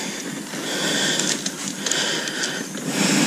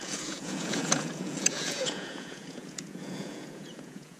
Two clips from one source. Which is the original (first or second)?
first